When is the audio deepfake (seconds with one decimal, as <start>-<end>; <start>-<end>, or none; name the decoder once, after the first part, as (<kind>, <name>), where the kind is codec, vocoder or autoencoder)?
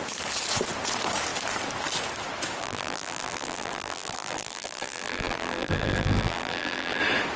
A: 2.6-7.0 (vocoder, BigVGAN v2)